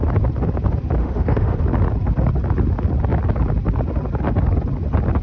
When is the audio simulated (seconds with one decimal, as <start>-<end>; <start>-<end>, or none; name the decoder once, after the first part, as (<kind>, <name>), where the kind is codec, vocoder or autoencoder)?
1.0-1.6 (autoencoder, DAC-VAE)